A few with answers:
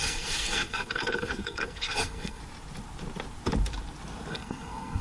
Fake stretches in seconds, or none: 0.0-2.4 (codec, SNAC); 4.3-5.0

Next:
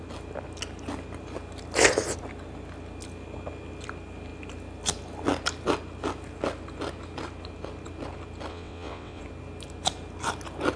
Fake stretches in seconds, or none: 8.5-9.2 (vocoder, WaveNeXt)